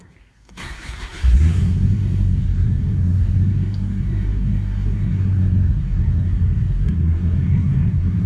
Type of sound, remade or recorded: remade